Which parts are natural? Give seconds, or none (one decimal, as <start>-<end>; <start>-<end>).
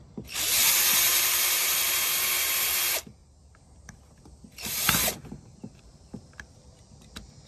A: 0.0-1.1; 1.9-3.2; 6.8-7.5